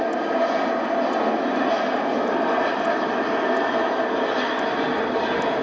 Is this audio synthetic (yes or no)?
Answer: no